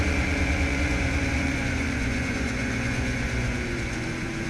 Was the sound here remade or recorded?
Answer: remade